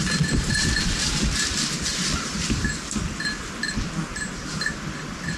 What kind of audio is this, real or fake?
real